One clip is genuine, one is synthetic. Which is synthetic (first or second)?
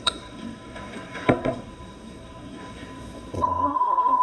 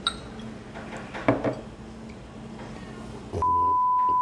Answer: first